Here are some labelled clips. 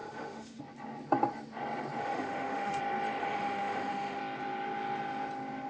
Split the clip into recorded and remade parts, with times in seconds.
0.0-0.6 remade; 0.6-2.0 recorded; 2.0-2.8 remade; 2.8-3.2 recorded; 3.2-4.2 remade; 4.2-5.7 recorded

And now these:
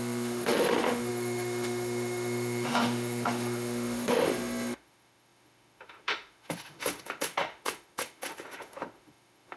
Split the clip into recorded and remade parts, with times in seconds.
0.0-9.6 remade

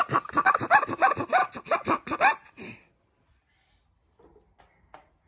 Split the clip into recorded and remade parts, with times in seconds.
0.0-5.3 recorded

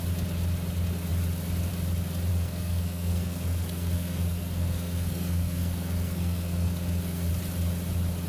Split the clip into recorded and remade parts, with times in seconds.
0.0-2.3 recorded; 2.3-7.3 remade; 7.3-8.3 recorded

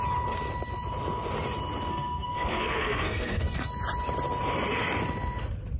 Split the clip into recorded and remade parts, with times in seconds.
0.0-1.9 recorded; 1.9-3.7 remade; 3.7-5.8 recorded

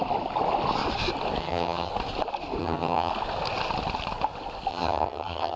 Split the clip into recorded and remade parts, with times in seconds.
0.0-1.4 recorded; 1.4-1.9 remade; 1.9-2.6 recorded; 2.6-3.1 remade; 3.1-4.7 recorded; 4.7-5.6 remade

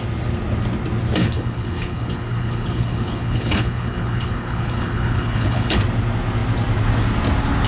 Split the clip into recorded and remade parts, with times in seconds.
0.0-1.2 recorded; 1.2-5.8 remade; 5.8-7.7 recorded

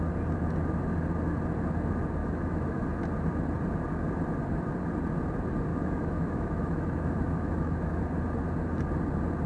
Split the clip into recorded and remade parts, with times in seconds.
0.0-2.2 recorded; 2.2-2.8 remade; 2.8-5.7 recorded; 5.7-8.0 remade; 8.0-9.5 recorded